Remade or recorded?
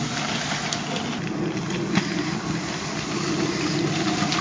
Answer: recorded